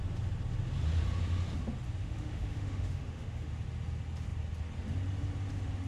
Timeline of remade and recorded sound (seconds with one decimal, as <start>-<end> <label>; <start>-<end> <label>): 0.0-2.0 recorded; 2.0-3.5 remade; 3.5-5.9 recorded